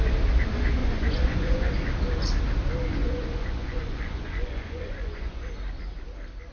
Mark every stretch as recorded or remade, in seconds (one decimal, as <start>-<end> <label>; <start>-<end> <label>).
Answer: 0.0-0.8 recorded; 0.8-1.7 remade; 1.7-3.0 recorded; 3.0-5.5 remade; 5.5-6.5 recorded